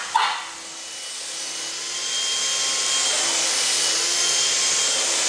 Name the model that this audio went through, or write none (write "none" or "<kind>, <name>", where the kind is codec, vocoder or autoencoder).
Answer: none